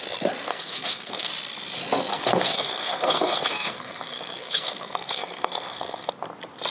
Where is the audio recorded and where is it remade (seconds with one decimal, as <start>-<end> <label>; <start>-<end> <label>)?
0.0-0.5 recorded; 0.5-1.3 remade; 1.3-2.1 recorded; 2.1-6.1 remade; 6.1-6.7 recorded